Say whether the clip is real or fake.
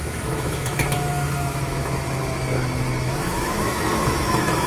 fake